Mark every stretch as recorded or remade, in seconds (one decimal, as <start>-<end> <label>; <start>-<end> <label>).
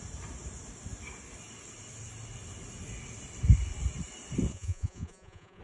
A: 0.0-4.5 recorded; 4.5-5.6 remade